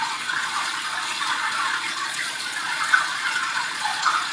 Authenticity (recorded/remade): remade